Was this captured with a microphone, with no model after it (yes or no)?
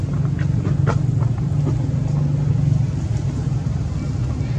yes